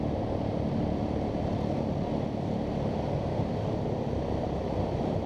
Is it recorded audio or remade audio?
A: recorded